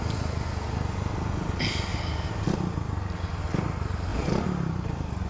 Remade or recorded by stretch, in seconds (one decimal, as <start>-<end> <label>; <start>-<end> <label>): 0.0-1.9 recorded; 1.9-2.5 remade; 2.5-5.3 recorded